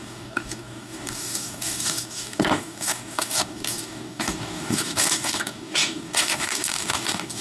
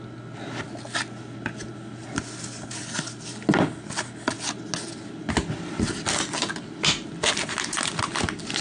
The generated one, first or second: first